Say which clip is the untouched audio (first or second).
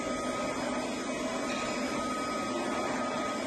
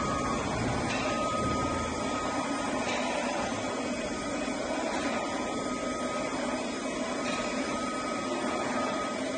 first